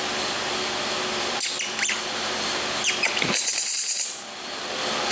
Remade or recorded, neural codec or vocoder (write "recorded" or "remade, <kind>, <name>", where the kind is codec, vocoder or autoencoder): remade, vocoder, BigVGAN v2